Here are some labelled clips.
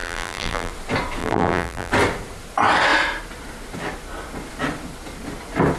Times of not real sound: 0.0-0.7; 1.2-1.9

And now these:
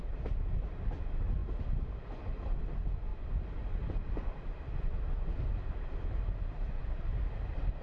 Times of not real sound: 3.1-4.9

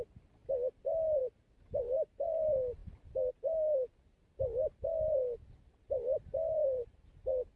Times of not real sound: 0.0-0.4; 1.2-7.6

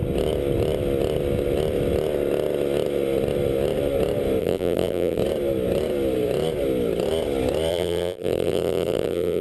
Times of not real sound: 4.4-5.2; 7.7-9.4

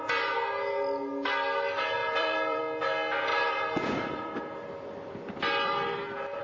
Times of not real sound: 2.0-2.6; 3.3-6.4